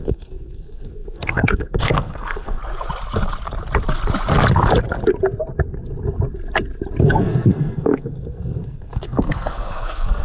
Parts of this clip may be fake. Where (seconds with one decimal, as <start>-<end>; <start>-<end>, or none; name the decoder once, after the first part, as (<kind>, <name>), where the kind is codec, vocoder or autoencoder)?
0.0-2.6 (codec, SNAC); 7.0-10.2